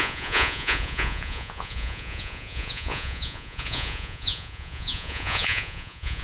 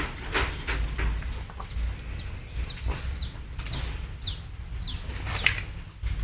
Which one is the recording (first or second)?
second